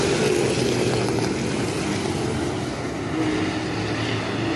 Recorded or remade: recorded